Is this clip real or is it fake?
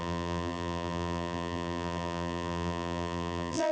fake